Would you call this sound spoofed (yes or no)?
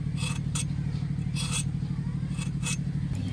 no